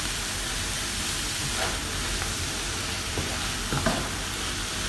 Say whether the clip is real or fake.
real